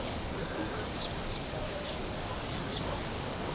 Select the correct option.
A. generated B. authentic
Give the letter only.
A